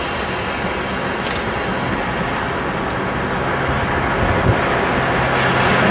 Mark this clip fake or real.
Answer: real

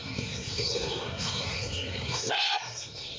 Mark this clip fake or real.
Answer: fake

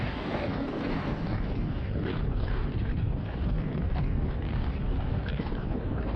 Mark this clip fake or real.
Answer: fake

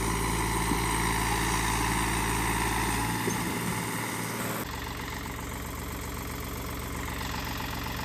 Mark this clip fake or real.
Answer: real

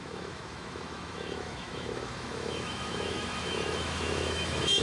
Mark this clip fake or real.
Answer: fake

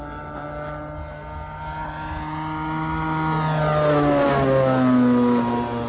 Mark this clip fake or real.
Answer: real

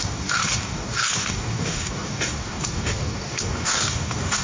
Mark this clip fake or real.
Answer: fake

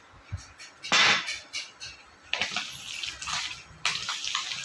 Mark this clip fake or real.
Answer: real